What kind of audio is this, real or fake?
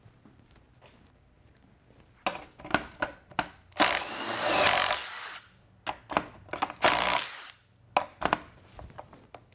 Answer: real